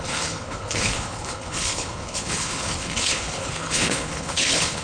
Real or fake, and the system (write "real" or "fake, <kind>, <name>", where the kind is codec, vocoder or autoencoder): fake, codec, HILCodec